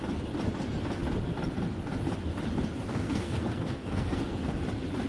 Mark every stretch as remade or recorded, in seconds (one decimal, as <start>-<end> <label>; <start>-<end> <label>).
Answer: 0.0-2.9 recorded; 2.9-4.6 remade; 4.6-5.1 recorded